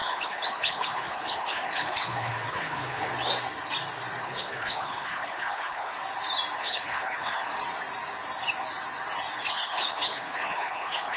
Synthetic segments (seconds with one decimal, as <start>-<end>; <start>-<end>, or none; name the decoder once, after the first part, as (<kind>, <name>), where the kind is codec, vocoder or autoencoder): 0.0-3.1 (codec, HILCodec); 4.2-5.9; 6.6-7.5; 9.5-11.2